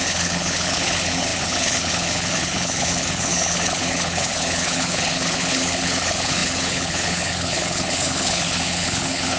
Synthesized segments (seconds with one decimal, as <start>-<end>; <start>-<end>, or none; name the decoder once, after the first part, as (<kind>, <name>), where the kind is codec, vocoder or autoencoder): 0.0-9.4 (codec, HILCodec)

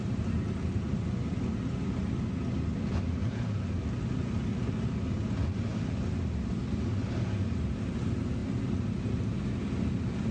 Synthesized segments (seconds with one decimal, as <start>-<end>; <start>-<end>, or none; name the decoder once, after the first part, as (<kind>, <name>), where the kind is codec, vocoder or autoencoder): none